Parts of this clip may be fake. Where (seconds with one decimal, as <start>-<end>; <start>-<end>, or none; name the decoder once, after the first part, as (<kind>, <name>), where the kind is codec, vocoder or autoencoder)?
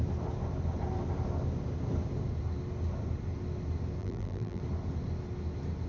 4.0-4.6 (vocoder, BigVGAN v2)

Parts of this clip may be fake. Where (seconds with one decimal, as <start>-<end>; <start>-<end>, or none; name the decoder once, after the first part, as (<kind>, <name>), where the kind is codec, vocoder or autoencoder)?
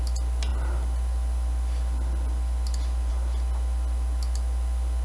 none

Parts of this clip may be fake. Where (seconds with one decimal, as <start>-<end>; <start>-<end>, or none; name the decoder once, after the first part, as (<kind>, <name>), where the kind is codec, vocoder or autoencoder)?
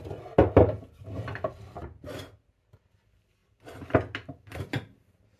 none